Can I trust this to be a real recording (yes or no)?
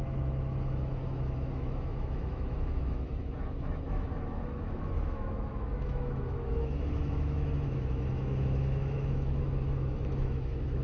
no